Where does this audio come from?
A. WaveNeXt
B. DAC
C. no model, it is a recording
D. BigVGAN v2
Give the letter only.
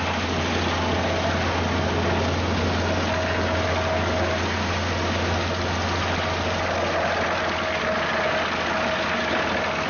C